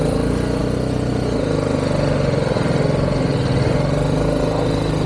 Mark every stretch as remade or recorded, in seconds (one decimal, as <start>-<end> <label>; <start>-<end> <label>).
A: 0.0-5.1 recorded